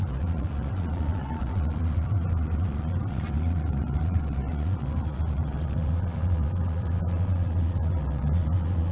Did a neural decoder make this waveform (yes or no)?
yes